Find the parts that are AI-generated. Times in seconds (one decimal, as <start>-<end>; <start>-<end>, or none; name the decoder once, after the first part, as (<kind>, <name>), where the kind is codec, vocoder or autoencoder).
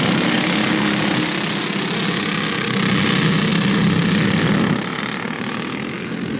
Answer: none